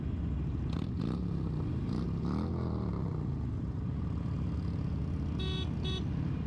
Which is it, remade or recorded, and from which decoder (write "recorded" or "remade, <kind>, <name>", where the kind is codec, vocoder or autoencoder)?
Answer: recorded